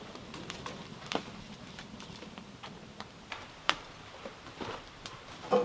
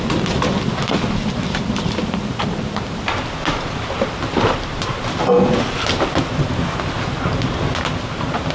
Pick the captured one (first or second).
second